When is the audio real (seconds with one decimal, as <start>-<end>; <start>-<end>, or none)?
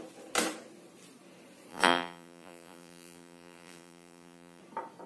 0.0-1.7; 4.6-5.1